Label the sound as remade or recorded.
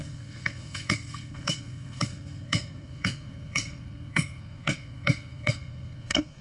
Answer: remade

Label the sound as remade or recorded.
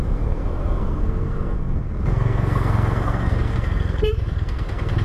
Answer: remade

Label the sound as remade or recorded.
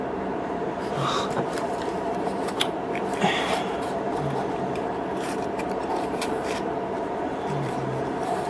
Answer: remade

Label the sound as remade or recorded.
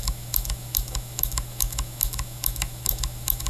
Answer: remade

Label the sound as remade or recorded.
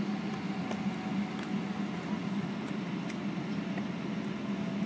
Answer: recorded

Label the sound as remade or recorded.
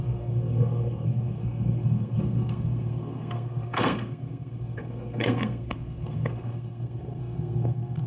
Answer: remade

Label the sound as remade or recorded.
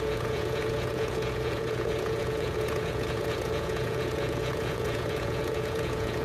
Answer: remade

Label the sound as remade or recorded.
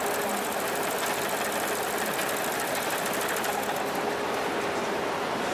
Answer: recorded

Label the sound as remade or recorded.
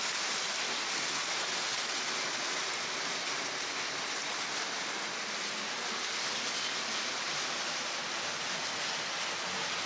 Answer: recorded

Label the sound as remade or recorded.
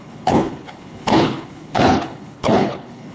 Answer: remade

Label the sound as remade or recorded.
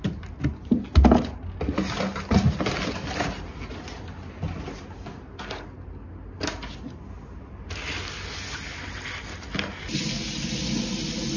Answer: recorded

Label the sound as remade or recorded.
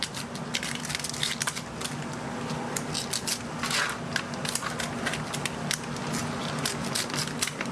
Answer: recorded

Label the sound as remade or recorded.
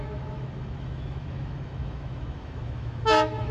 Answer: remade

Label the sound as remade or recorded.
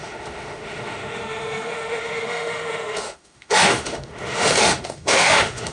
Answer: remade